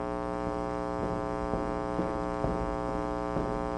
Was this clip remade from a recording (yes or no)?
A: no